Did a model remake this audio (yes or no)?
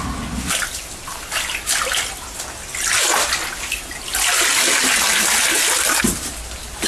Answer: no